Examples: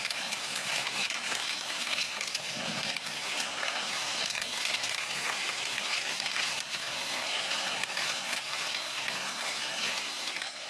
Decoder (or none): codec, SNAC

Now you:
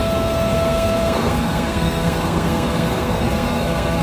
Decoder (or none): codec, SNAC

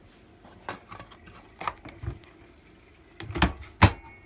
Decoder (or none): none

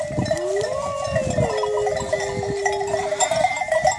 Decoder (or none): vocoder, BigVGAN v2